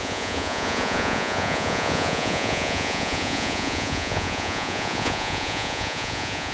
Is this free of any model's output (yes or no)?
no